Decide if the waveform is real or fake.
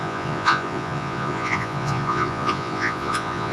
fake